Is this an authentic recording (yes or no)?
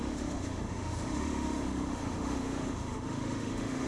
no